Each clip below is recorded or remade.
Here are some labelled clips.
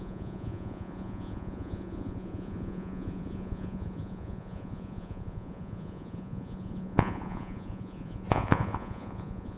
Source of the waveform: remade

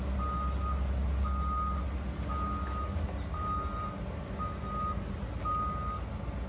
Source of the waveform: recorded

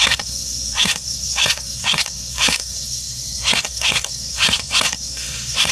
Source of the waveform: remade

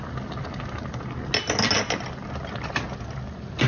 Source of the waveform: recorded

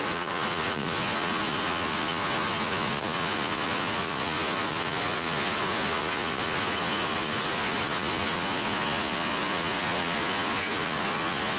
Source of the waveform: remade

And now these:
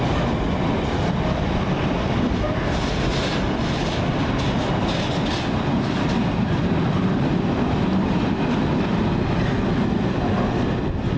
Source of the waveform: recorded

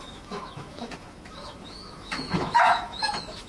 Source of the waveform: remade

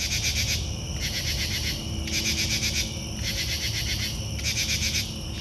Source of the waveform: recorded